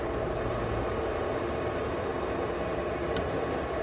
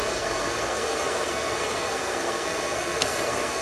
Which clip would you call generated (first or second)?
second